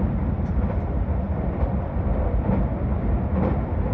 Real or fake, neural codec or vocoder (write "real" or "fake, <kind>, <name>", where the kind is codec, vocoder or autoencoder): fake, vocoder, BigVGAN v2